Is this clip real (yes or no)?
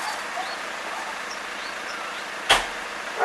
yes